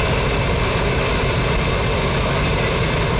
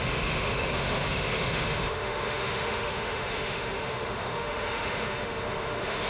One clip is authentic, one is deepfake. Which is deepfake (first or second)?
second